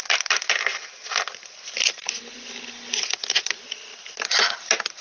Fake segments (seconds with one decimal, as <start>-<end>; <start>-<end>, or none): none